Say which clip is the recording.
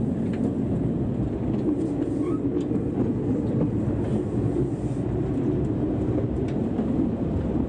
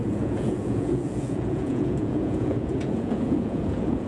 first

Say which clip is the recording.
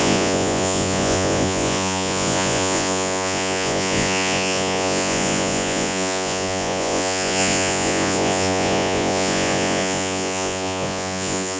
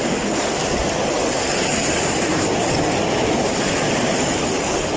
second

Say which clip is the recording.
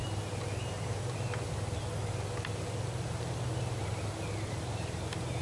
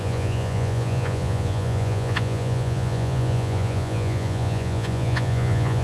first